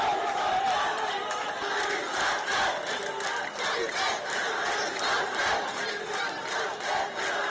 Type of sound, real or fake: real